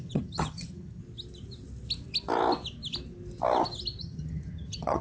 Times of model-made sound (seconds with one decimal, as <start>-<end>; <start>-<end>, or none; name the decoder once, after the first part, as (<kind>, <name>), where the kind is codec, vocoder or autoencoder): 0.0-1.0 (vocoder, HiFi-GAN); 4.0-5.0